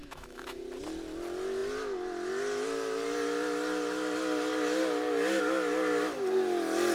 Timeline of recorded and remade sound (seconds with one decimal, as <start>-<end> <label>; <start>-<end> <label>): 0.0-0.6 remade; 0.6-6.9 recorded